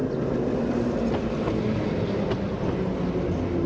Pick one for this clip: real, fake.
real